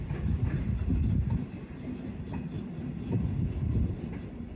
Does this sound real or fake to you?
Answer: real